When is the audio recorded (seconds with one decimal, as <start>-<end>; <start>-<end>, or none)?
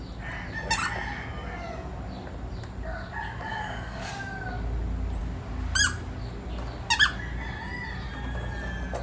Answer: 0.0-3.5; 4.1-9.0